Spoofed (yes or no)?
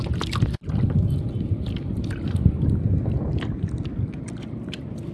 no